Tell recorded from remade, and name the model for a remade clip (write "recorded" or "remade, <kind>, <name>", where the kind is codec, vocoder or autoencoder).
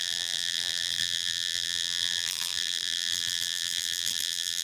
remade, vocoder, BigVGAN v2